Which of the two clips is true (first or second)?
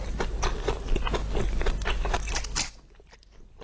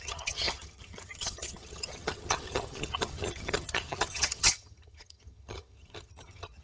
first